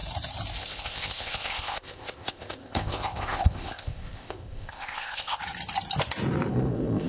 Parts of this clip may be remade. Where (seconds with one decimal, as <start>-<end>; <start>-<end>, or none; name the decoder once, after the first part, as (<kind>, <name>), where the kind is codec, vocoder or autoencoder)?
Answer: 0.6-5.4 (codec, ZipCodec); 6.5-7.1